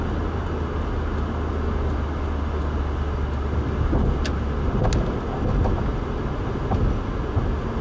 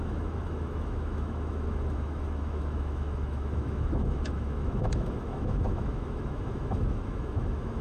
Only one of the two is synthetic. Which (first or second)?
second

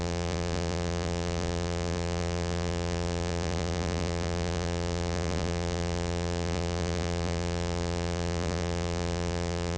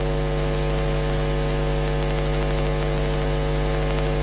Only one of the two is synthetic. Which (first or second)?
first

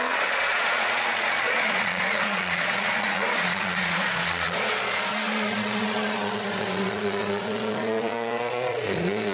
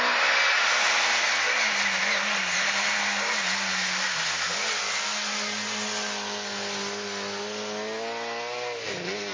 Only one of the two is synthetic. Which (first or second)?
first